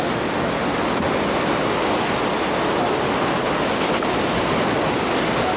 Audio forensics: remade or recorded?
recorded